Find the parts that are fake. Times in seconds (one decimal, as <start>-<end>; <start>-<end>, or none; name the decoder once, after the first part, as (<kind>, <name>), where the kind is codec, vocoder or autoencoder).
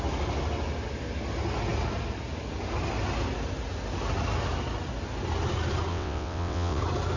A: 5.9-6.8 (vocoder, WaveNeXt)